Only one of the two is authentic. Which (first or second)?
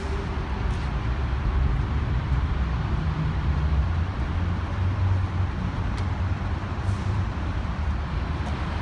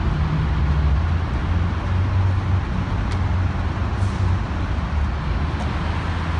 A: second